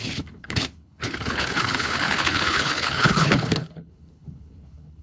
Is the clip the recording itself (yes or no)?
no